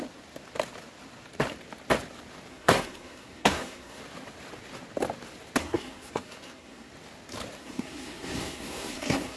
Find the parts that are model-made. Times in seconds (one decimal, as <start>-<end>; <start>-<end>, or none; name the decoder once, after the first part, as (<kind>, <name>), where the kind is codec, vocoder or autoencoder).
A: 2.5-4.0 (codec, SNAC); 5.6-6.9; 7.6-9.4